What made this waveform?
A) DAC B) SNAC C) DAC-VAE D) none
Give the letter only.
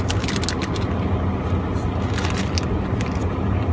D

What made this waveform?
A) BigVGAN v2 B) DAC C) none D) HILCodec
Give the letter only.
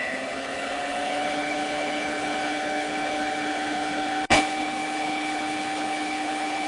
D